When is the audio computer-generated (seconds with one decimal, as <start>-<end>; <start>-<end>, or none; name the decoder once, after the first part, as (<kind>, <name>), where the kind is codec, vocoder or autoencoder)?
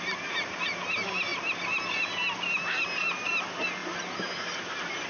none